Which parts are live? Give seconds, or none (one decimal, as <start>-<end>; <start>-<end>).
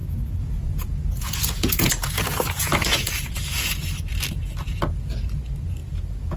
3.8-5.8